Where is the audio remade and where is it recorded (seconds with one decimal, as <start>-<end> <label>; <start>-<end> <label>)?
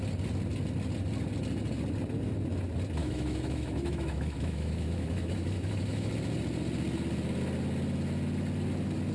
0.0-3.0 recorded; 3.0-6.1 remade; 6.1-9.1 recorded